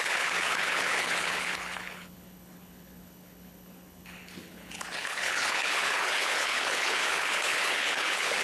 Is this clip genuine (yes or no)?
no